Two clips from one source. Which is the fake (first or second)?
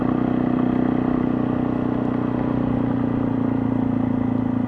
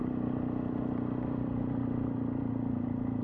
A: second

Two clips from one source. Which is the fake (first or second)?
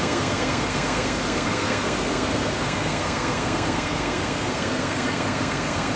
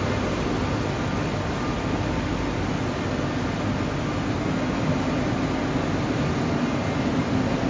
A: first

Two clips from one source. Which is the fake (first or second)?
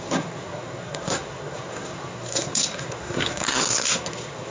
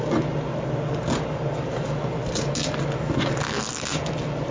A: first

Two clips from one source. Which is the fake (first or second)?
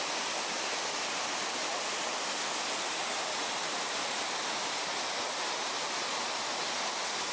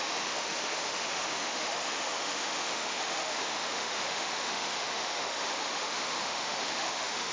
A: second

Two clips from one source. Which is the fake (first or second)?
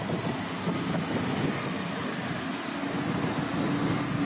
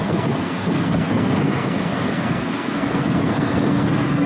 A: second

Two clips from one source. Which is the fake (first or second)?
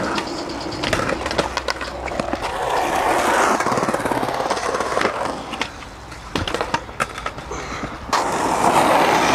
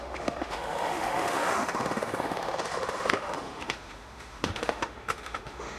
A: second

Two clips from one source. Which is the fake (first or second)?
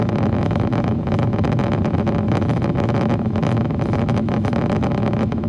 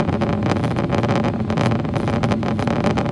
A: first